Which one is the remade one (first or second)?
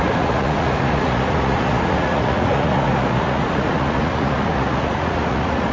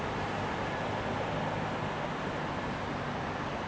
first